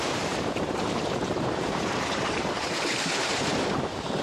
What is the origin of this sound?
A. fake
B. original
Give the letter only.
A